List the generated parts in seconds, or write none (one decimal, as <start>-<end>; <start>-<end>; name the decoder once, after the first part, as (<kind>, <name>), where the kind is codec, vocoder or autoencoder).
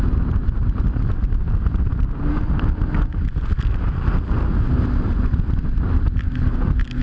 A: 0.0-0.6 (vocoder, BigVGAN v2); 4.8-7.0